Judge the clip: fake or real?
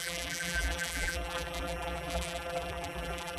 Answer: fake